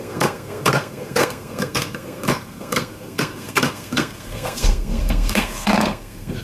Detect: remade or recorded remade